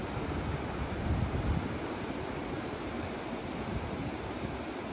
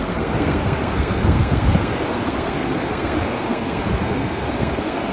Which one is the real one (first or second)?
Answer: first